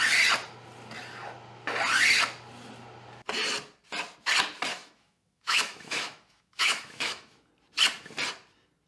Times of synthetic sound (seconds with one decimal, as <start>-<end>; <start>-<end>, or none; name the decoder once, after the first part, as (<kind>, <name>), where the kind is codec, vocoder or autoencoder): 4.7-7.5 (autoencoder, DAC-VAE)